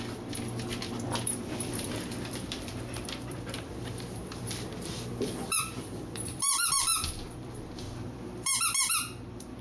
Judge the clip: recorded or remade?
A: remade